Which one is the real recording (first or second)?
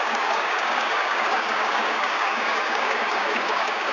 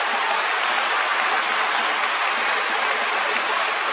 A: second